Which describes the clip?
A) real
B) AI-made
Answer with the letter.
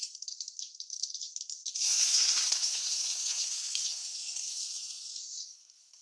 B